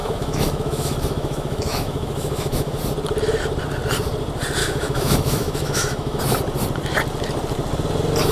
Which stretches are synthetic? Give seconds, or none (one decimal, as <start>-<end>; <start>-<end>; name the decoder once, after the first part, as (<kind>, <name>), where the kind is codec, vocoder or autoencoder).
0.0-2.8 (autoencoder, DAC-VAE); 4.6-6.2